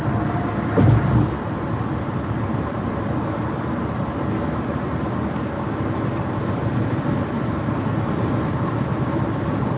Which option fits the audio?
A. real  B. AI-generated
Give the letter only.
A